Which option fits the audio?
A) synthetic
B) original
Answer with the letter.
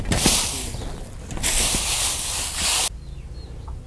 B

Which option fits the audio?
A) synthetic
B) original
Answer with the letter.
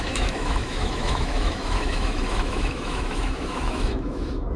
A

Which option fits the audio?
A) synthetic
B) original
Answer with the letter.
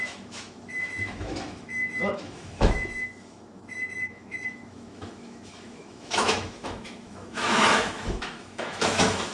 A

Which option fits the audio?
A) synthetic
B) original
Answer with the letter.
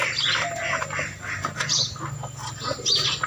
B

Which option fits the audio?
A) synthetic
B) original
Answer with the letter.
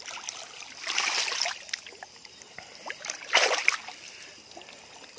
B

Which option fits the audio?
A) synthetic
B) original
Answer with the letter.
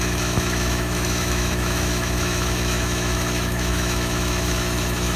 A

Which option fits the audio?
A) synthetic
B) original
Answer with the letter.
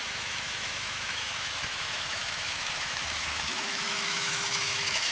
A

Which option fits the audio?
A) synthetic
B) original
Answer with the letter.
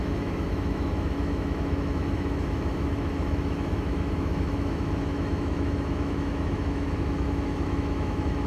A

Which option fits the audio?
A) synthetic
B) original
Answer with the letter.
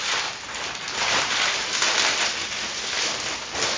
B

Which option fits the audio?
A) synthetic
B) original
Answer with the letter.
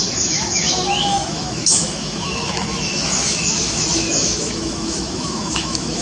A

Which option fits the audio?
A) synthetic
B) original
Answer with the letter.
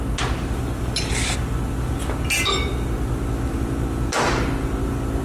B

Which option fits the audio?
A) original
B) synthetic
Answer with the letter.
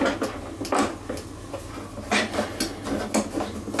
A